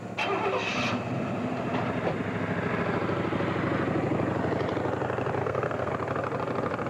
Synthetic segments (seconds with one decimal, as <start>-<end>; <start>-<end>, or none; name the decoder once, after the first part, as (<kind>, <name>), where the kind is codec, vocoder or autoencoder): 5.4-5.9 (codec, SNAC)